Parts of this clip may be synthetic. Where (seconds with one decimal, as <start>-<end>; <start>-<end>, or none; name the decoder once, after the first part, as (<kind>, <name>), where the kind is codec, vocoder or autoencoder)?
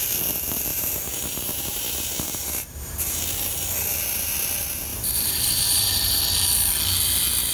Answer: 0.7-3.2 (vocoder, BigVGAN v2); 4.9-6.2